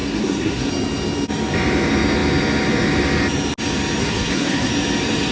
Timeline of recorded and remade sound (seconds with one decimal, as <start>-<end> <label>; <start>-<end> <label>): 0.0-0.7 remade; 0.7-4.0 recorded; 4.0-4.7 remade; 4.7-5.3 recorded